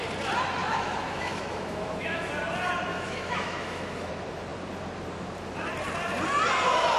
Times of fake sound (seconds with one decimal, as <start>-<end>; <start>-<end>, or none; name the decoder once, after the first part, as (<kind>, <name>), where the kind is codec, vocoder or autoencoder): 0.6-2.3 (autoencoder, DAC-VAE); 2.9-4.1